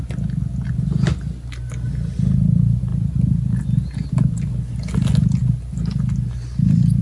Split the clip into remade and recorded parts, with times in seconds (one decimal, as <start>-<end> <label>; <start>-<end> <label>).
0.0-7.0 recorded